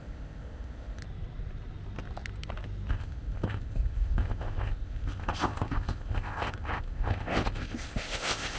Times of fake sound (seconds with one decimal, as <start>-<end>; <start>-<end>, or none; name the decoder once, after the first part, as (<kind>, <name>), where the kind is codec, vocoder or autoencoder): 0.0-1.0 (codec, ZipCodec); 2.9-8.6